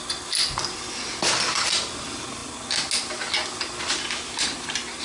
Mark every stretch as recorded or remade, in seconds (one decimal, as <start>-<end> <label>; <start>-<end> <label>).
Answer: 0.0-5.0 recorded